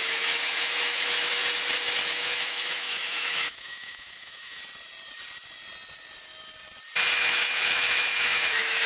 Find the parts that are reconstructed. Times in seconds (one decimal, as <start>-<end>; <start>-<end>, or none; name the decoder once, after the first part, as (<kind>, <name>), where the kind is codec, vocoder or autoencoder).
0.0-1.4 (autoencoder, DAC-VAE); 2.1-4.6; 7.2-8.9